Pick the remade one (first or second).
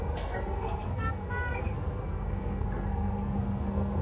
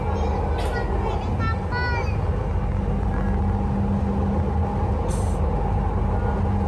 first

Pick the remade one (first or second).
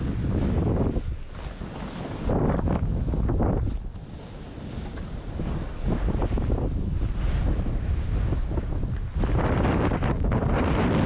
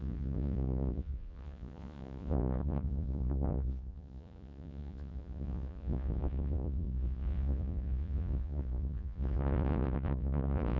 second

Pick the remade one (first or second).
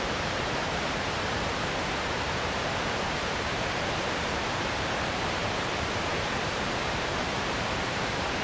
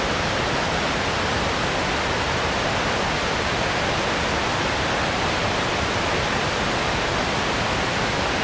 first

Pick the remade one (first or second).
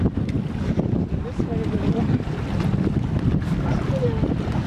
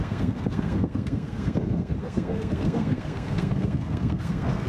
second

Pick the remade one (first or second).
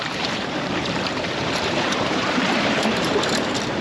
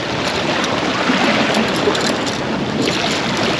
first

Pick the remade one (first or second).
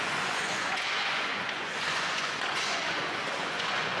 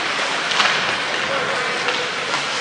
first